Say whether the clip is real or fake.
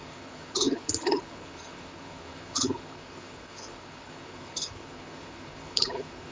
fake